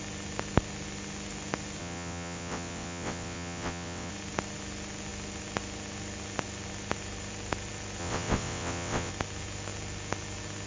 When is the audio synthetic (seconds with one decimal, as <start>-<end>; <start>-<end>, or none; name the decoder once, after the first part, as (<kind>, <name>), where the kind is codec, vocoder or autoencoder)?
1.8-4.1 (vocoder, WaveNeXt); 8.0-9.1